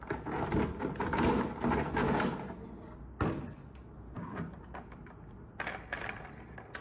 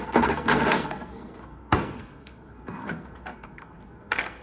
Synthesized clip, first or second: second